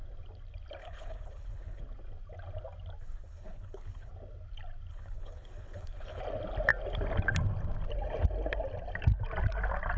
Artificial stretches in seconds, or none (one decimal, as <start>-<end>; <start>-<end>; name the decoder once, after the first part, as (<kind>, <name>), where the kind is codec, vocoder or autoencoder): 0.8-1.8 (codec, HILCodec); 3.0-4.1; 4.9-6.2